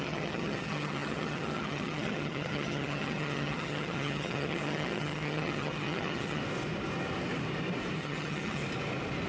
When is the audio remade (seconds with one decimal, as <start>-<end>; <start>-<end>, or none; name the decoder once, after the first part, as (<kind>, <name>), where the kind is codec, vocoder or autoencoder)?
0.0-6.4 (vocoder, HiFi-GAN); 8.0-8.6